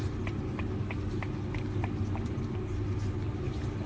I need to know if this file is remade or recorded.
recorded